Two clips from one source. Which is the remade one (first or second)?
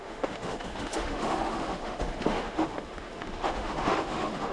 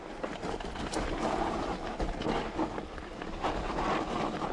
first